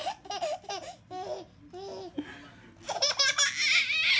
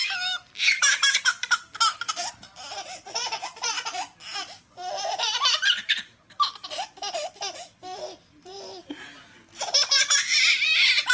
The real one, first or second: first